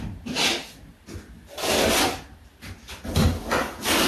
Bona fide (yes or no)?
no